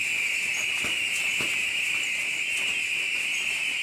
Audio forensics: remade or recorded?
recorded